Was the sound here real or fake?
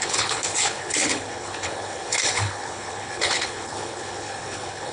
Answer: fake